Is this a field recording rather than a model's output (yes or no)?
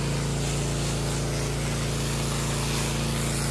yes